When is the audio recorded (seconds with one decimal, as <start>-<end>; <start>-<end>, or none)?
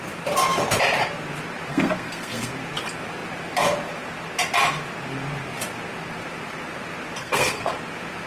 0.0-1.7; 2.5-7.2; 7.7-8.3